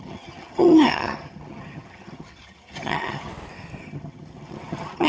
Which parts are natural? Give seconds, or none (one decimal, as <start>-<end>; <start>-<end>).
3.3-3.8